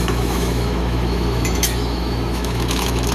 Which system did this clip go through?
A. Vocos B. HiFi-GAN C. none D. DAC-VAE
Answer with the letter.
D